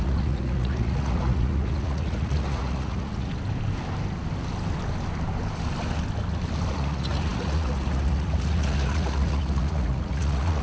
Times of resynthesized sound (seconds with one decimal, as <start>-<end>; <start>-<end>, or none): 0.0-3.3; 6.7-10.6